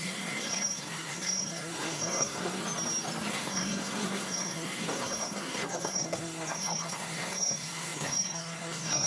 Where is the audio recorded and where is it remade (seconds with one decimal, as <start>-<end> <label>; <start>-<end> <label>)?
0.0-2.6 remade; 2.6-3.3 recorded; 3.3-9.1 remade